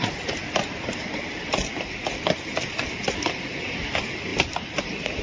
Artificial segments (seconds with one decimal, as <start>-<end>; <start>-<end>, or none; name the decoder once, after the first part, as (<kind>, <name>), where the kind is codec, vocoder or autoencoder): 0.4-3.5 (vocoder, BigVGAN v2); 4.3-5.2